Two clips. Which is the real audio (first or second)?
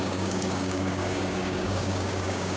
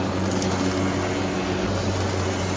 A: second